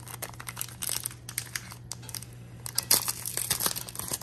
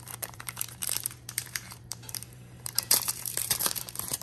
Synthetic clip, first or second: second